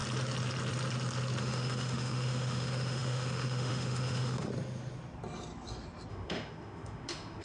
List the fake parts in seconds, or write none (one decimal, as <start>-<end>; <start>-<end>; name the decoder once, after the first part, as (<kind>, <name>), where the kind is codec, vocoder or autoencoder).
1.4-4.5 (autoencoder, DAC-VAE); 6.1-7.4